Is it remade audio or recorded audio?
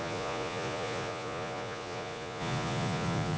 remade